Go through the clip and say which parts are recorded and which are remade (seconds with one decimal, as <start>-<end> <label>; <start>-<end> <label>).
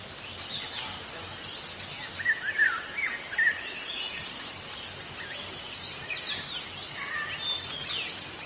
0.0-8.5 recorded